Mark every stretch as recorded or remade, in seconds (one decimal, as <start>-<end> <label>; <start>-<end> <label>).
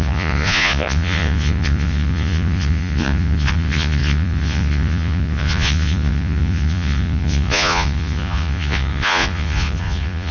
0.0-10.3 remade